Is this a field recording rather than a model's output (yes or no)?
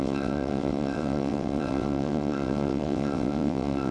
no